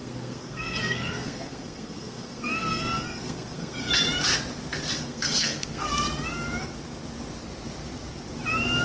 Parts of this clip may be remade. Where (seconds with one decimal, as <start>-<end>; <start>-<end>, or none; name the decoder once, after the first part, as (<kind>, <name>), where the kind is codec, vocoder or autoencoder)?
0.0-3.9 (codec, SNAC); 4.9-5.9